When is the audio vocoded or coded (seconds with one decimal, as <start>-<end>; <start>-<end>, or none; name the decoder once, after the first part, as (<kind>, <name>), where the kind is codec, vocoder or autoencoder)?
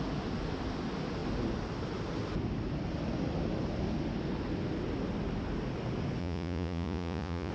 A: 6.2-7.5 (vocoder, Vocos)